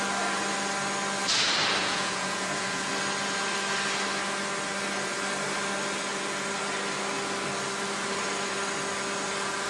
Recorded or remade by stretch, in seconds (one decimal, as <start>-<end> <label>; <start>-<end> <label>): 0.0-1.8 recorded; 1.8-2.9 remade; 2.9-9.7 recorded